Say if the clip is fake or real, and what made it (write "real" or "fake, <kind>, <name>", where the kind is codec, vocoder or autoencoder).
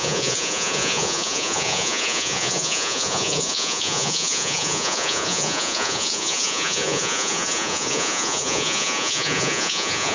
fake, vocoder, Vocos